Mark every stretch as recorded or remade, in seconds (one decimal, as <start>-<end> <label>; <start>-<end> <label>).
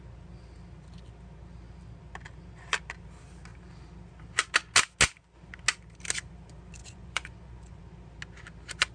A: 0.0-6.8 recorded; 6.8-7.8 remade; 7.8-8.9 recorded